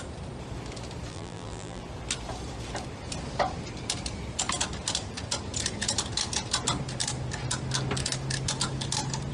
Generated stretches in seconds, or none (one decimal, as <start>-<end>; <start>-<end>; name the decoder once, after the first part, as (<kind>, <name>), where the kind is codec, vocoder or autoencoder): 1.1-1.8 (vocoder, BigVGAN v2)